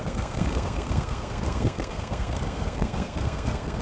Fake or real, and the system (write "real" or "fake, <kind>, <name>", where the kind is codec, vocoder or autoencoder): fake, codec, SNAC